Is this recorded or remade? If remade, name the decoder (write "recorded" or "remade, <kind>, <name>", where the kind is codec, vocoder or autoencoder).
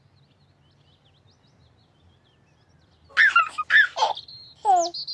recorded